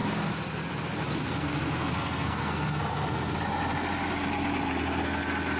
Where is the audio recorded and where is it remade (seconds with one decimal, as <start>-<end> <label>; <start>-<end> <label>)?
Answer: 0.0-1.2 recorded; 1.2-3.3 remade; 3.3-5.6 recorded